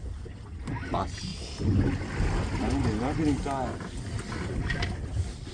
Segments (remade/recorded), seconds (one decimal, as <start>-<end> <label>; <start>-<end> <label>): 0.0-5.5 recorded